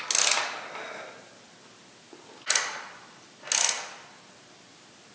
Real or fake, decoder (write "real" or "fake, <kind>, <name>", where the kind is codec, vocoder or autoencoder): real